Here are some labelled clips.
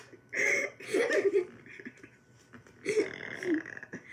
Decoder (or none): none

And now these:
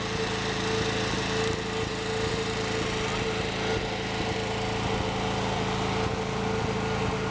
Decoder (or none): none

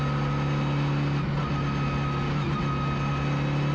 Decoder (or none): none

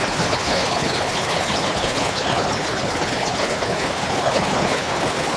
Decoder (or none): codec, HILCodec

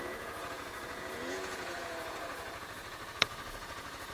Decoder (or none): vocoder, Vocos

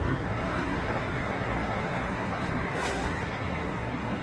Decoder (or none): codec, SNAC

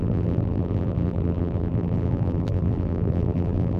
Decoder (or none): vocoder, BigVGAN v2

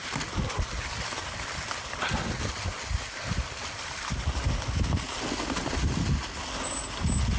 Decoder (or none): none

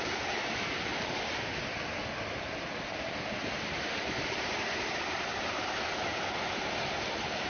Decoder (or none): vocoder, BigVGAN v2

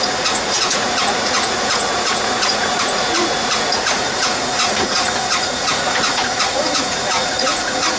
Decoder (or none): vocoder, Vocos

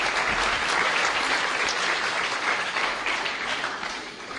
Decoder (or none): vocoder, BigVGAN v2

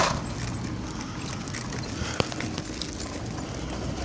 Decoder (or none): none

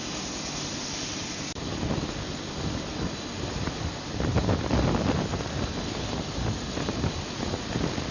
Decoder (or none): none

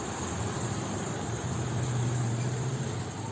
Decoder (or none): vocoder, BigVGAN v2